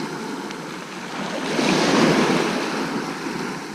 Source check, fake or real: real